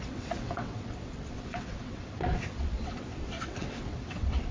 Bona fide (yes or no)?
no